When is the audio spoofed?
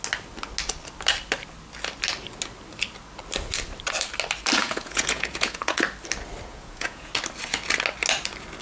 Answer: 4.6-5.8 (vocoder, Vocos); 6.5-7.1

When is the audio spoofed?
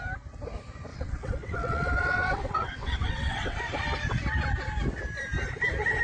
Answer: 0.9-3.6 (vocoder, WaveNeXt)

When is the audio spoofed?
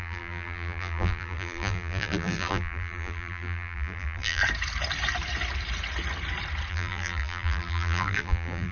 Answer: 0.0-4.4 (vocoder, BigVGAN v2); 6.7-8.7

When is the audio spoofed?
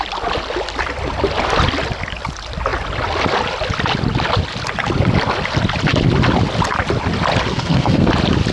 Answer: 7.5-8.1 (codec, SNAC)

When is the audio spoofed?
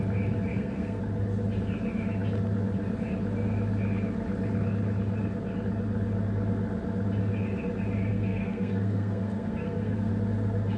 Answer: 0.5-1.0 (codec, SNAC); 8.1-10.1